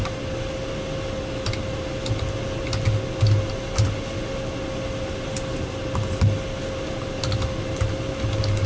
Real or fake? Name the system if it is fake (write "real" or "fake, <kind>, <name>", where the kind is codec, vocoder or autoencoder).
real